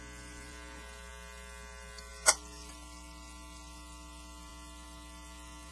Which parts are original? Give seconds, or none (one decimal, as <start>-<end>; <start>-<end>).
0.0-5.7

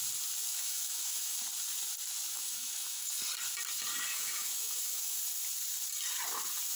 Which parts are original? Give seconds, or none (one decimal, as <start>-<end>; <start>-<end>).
0.0-0.5; 1.4-2.3; 3.1-4.1; 5.2-6.8

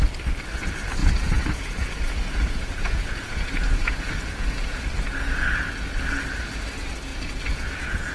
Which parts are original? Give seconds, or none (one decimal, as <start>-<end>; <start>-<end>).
0.0-1.0; 4.9-5.5; 6.0-7.1

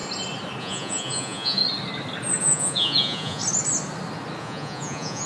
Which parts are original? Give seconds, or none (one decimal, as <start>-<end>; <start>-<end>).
0.0-0.6; 1.6-2.4; 3.4-4.4

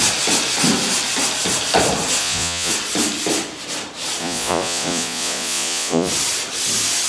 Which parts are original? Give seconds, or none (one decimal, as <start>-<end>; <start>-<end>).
0.0-2.2; 2.7-4.2; 6.1-7.1

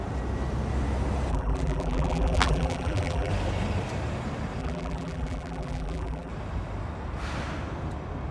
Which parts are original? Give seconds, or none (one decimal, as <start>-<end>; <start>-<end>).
0.0-1.3; 3.3-4.6; 6.3-8.3

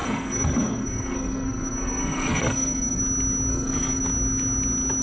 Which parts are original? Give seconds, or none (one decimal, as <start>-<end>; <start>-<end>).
3.0-3.5; 4.0-5.0